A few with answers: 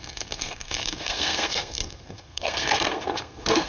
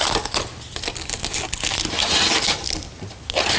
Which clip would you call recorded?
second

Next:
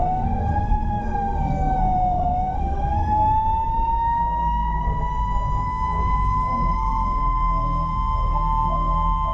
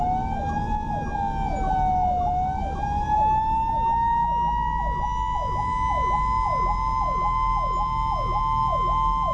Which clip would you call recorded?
second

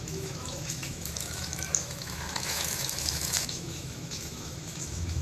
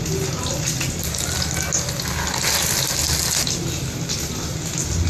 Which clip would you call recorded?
second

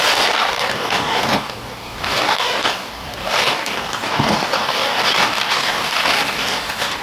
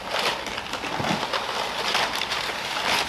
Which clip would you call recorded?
second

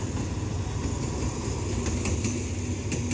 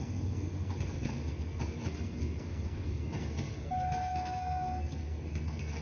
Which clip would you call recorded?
first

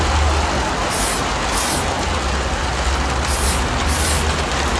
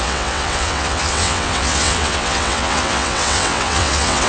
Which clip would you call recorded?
first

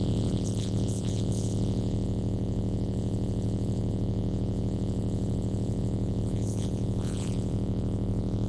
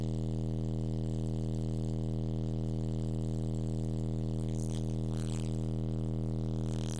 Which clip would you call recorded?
second